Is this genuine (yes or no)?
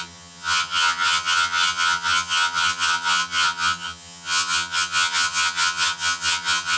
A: no